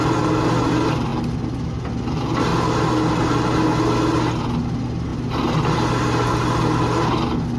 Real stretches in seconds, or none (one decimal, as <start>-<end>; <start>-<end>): 0.0-7.6